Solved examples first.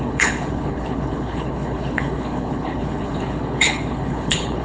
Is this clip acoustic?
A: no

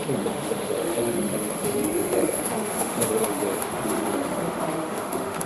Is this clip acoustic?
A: no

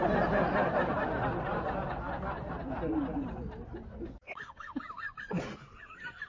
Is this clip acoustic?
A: yes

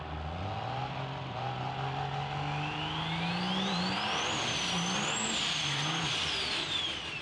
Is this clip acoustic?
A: yes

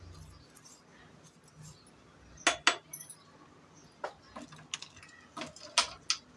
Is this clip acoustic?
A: yes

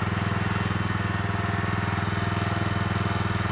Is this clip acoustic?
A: yes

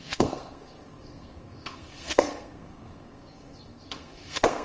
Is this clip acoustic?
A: no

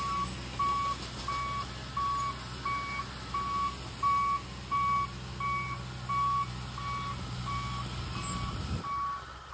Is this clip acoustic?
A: yes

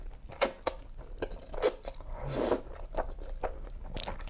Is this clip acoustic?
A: yes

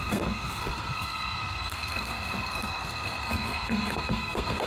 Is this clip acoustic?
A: no